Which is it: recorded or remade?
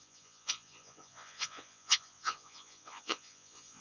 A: remade